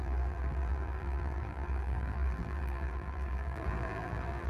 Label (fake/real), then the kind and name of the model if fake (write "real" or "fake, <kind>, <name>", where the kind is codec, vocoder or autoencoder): fake, vocoder, BigVGAN v2